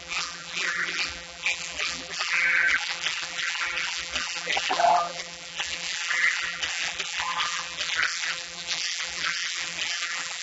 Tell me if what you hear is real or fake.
fake